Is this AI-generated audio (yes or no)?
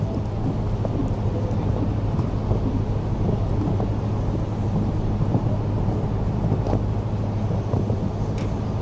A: no